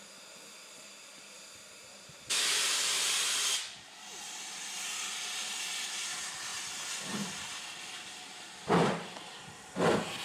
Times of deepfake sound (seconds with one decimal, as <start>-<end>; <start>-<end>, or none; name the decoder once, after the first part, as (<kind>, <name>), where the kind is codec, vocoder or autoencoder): 0.0-6.5 (vocoder, BigVGAN v2); 7.0-10.2